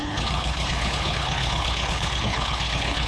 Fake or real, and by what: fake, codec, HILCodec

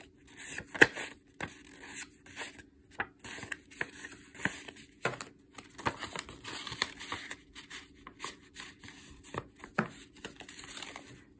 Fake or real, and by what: real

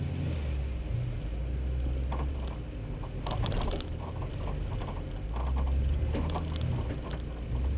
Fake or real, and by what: real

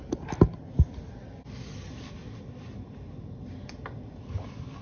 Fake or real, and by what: real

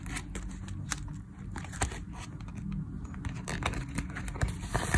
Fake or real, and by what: real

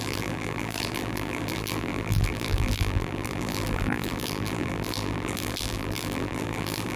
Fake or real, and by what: fake, vocoder, BigVGAN v2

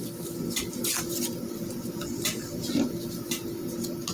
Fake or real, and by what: real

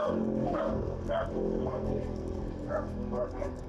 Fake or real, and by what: fake, codec, SNAC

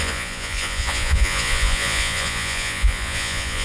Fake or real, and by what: fake, vocoder, Vocos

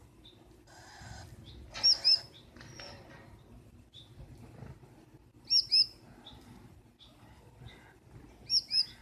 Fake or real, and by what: real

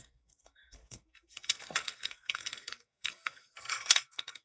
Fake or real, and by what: fake, codec, SNAC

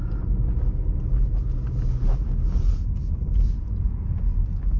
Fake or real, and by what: real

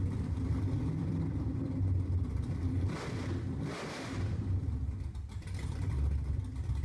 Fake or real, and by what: fake, vocoder, BigVGAN v2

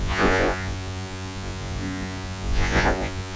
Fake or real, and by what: fake, vocoder, Vocos